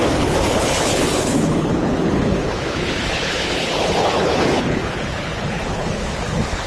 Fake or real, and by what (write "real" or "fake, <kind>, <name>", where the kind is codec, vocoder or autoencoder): fake, codec, HILCodec